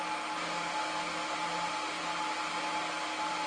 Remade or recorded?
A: recorded